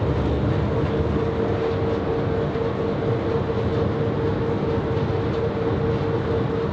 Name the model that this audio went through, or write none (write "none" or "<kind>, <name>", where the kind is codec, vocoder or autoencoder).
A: none